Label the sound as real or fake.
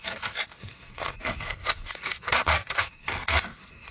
fake